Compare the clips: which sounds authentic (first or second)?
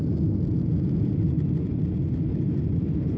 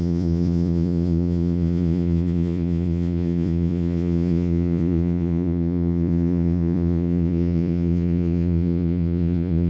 first